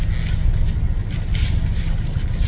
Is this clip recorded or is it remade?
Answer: recorded